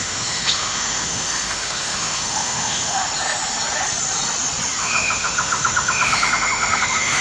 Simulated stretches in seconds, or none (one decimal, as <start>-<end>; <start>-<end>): 0.0-3.0; 4.8-7.2